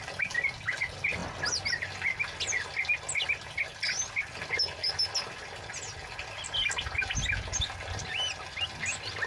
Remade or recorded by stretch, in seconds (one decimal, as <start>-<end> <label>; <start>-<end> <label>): 0.0-9.3 recorded